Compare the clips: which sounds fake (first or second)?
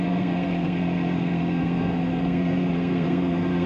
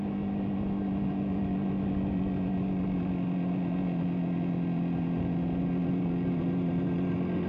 first